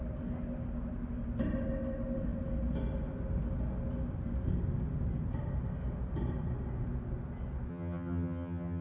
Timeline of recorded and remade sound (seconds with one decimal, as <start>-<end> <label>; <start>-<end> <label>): 0.0-7.7 recorded; 7.7-8.8 remade